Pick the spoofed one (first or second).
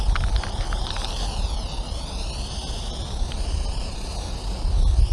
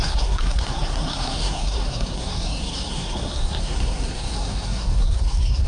second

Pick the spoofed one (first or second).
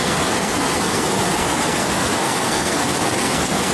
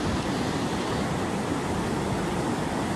first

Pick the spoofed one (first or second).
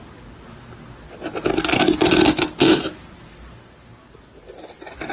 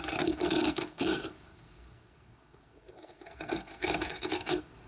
second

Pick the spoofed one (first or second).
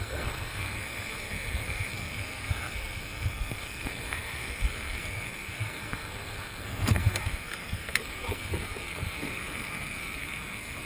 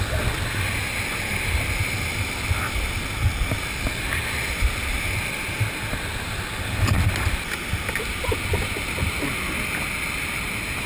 first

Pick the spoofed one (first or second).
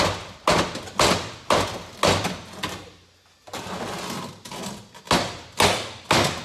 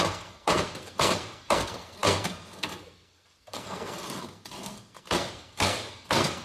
second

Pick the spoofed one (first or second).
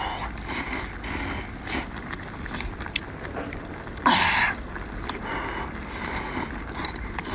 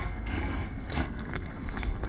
second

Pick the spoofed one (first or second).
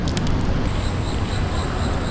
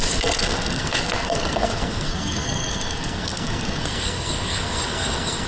second